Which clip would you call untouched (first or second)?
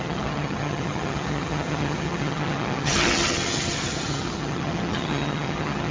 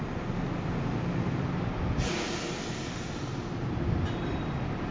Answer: second